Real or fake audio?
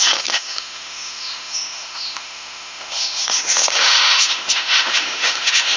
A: fake